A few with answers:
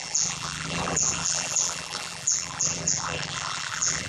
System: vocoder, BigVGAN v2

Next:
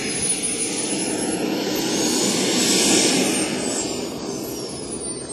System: none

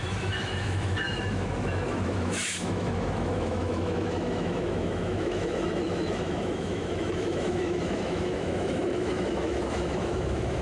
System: autoencoder, DAC-VAE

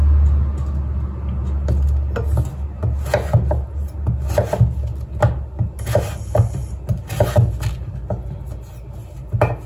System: none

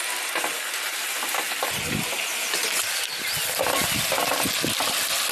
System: none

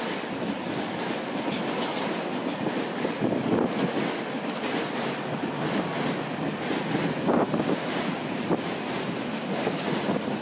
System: none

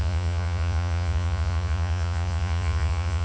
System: vocoder, Vocos